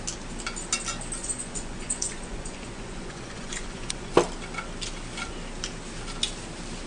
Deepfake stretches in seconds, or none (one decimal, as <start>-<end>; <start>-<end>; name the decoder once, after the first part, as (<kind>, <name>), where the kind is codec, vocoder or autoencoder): 1.2-4.1 (vocoder, Vocos)